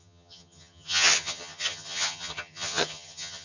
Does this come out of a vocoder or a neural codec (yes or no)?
yes